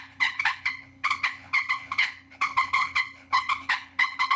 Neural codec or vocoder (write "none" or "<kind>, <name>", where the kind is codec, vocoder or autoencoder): codec, HILCodec